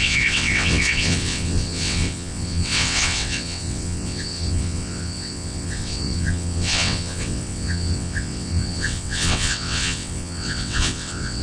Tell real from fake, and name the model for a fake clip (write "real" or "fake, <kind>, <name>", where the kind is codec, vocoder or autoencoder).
fake, vocoder, WaveNeXt